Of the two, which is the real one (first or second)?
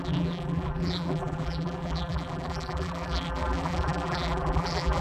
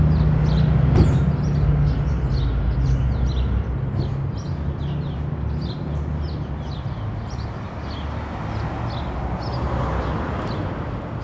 second